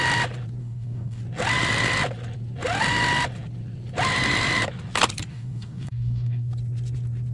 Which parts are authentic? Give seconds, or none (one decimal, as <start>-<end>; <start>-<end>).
0.0-0.6; 1.2-5.3; 6.5-7.3